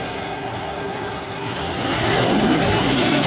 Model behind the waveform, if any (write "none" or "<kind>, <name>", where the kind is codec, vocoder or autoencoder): codec, SNAC